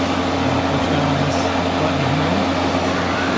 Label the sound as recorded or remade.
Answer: recorded